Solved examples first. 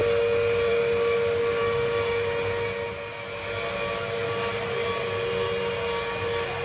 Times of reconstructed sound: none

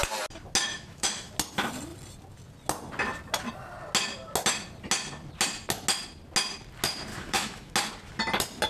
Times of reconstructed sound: 0.7-1.3 (autoencoder, DAC-VAE); 7.1-7.7

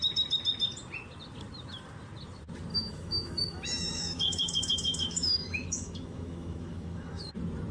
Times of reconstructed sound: 2.7-7.3 (autoencoder, DAC-VAE)

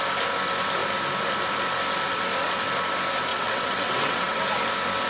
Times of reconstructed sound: 3.3-4.4 (vocoder, WaveNeXt)

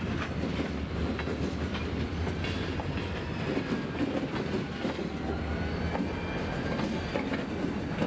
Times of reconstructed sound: none

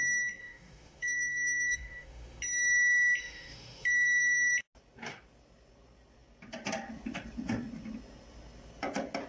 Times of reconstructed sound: 0.4-2.4 (autoencoder, DAC-VAE); 3.2-4.5